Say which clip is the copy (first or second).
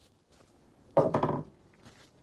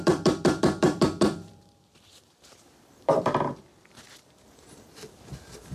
second